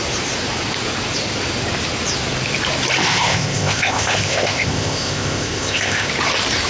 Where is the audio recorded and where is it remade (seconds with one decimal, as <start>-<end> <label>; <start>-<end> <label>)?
0.0-3.0 recorded; 3.0-6.1 remade; 6.1-6.7 recorded